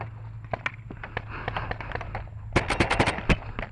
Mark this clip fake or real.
real